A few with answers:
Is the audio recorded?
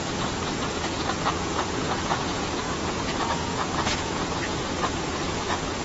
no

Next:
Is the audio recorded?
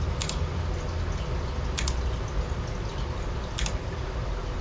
yes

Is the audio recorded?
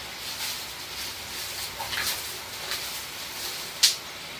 yes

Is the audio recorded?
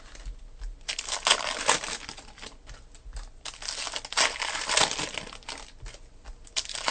yes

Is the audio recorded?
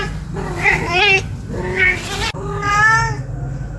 yes